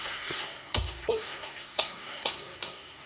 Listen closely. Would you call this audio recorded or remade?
remade